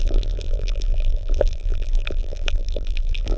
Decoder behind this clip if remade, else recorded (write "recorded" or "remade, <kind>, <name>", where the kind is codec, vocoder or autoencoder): remade, vocoder, BigVGAN v2